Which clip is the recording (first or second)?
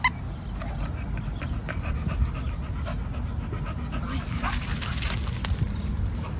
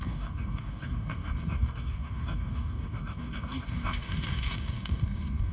first